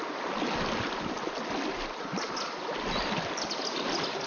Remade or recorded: recorded